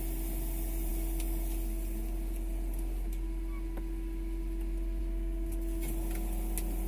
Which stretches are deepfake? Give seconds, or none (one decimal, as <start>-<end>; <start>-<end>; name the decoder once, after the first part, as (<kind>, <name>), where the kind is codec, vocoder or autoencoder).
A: none